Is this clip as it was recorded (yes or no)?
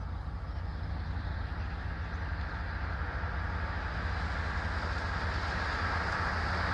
yes